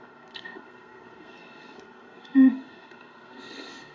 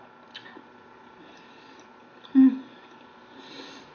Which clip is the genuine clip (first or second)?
second